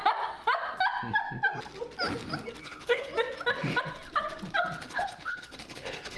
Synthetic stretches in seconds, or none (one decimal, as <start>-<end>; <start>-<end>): 2.6-3.1; 4.8-6.2